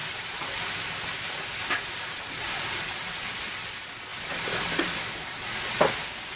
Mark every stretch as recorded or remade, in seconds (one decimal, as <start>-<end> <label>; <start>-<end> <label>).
0.0-6.4 recorded